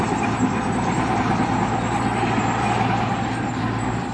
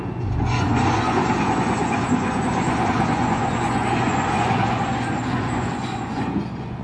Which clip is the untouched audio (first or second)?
first